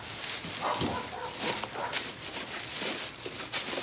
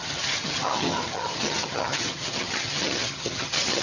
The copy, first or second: second